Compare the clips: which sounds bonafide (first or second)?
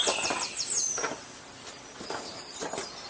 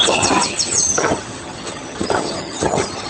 first